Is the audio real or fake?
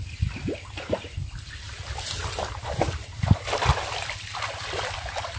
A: real